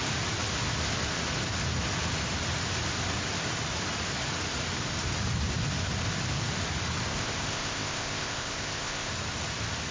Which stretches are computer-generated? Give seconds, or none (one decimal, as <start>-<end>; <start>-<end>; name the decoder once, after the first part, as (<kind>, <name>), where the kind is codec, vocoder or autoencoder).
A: 7.1-9.1 (codec, ZipCodec)